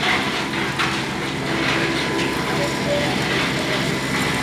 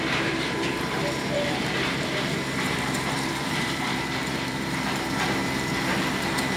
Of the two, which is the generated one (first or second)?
second